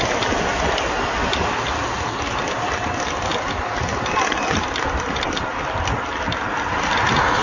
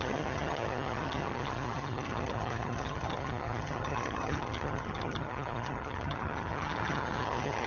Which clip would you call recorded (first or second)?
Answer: first